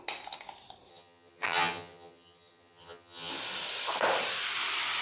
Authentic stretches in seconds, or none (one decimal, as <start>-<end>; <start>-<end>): 0.0-0.9; 3.3-5.0